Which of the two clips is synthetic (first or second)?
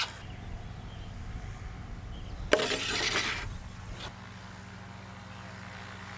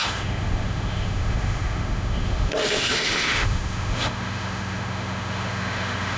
second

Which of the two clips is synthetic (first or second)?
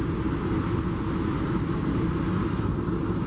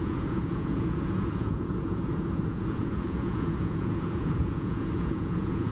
second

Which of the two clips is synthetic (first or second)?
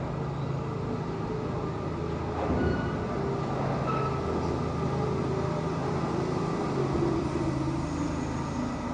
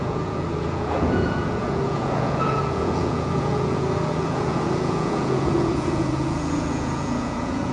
second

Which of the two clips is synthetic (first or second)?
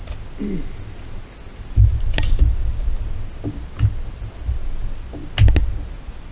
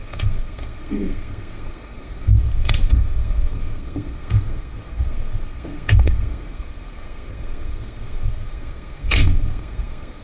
second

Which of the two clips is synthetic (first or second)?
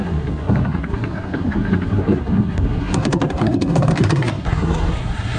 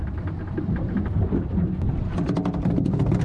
first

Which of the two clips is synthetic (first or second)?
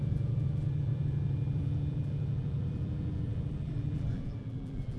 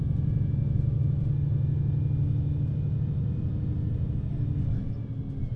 first